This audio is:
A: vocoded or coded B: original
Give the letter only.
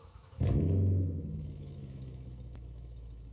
A